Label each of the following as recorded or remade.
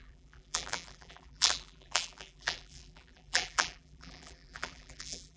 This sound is remade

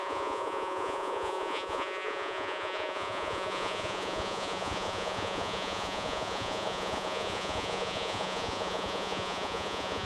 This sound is remade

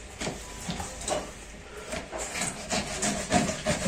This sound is recorded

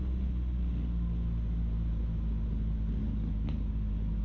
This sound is recorded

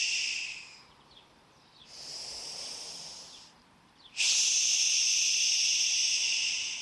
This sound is recorded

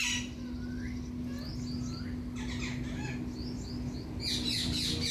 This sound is recorded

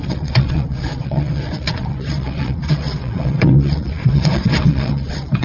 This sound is remade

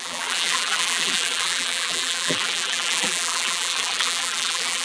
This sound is remade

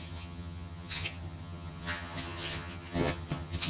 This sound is remade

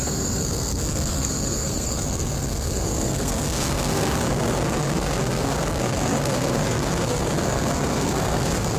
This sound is remade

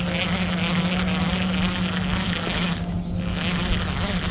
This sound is recorded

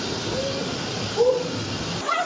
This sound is remade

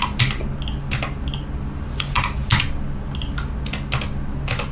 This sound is recorded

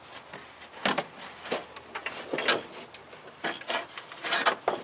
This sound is recorded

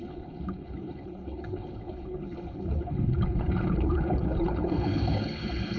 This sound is remade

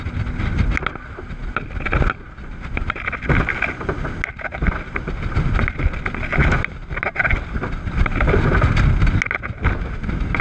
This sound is recorded